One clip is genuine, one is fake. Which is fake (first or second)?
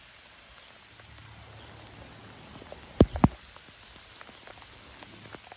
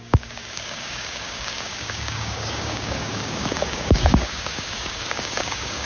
second